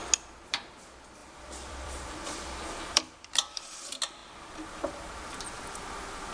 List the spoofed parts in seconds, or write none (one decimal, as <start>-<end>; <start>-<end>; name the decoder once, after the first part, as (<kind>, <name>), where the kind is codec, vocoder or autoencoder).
1.2-3.6 (vocoder, BigVGAN v2)